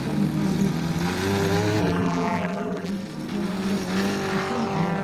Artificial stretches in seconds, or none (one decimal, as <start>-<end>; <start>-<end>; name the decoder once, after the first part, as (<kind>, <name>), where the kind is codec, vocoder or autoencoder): 1.8-2.9 (vocoder, BigVGAN v2)